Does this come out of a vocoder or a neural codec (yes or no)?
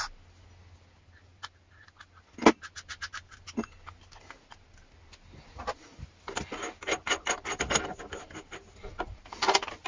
no